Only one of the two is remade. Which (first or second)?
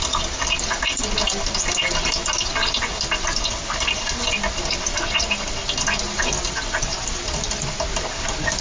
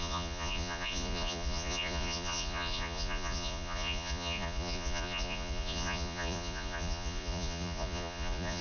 second